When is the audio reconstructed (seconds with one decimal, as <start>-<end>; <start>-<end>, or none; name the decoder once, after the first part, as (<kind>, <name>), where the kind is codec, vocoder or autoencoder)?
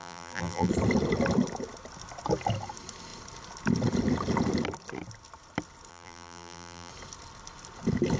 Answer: 0.0-0.7 (vocoder, BigVGAN v2); 5.9-6.9